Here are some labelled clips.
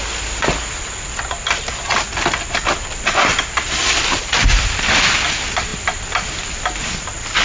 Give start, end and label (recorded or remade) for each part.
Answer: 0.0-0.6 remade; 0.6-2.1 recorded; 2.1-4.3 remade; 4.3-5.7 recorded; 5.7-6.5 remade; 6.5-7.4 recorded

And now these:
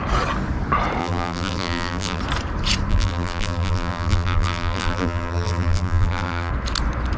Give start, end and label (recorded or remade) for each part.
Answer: 0.0-1.0 recorded; 1.0-2.2 remade; 2.2-2.9 recorded; 2.9-6.5 remade; 6.5-7.2 recorded

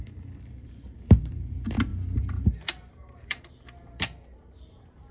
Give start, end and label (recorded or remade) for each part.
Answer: 0.0-0.6 recorded; 0.6-1.5 remade; 1.5-1.9 recorded; 1.9-5.1 remade

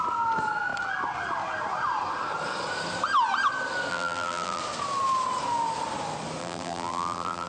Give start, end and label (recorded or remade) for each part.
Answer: 0.0-3.9 recorded; 3.9-4.6 remade; 4.6-6.4 recorded; 6.4-7.5 remade

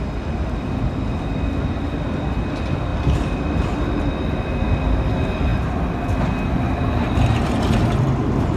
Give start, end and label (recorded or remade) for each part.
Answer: 0.0-8.6 recorded

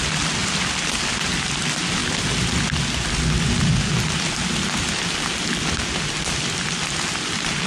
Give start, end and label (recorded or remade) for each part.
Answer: 0.0-7.7 recorded

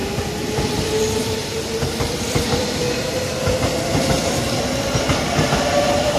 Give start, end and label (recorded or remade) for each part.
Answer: 0.0-1.0 remade; 1.0-1.4 recorded; 1.4-4.8 remade; 4.8-6.2 recorded